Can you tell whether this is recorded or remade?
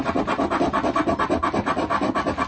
recorded